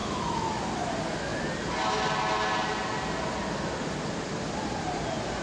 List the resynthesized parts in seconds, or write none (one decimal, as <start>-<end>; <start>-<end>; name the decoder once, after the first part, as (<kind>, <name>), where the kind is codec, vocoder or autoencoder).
0.0-0.6 (autoencoder, DAC-VAE)